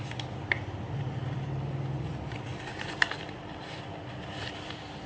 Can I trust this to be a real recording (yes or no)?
no